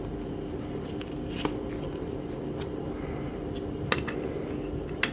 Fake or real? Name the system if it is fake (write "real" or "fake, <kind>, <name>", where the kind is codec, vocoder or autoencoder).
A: real